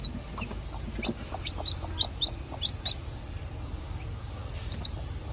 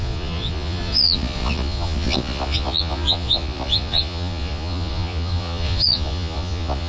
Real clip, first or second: first